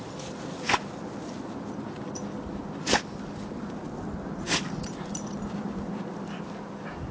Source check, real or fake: real